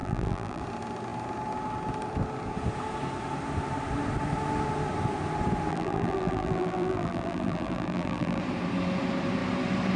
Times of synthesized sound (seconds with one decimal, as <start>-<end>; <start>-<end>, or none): 0.0-0.6; 5.7-8.4